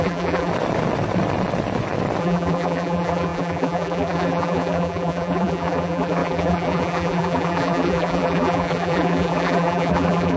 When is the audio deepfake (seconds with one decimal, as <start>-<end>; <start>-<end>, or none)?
0.0-0.5; 2.2-10.4